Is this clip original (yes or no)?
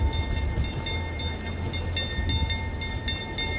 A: yes